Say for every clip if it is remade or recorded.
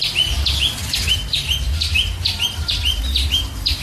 recorded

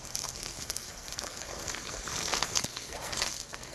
remade